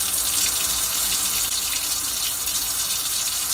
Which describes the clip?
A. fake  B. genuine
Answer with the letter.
B